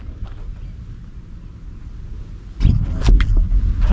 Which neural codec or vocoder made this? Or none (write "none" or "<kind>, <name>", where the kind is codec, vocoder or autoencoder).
none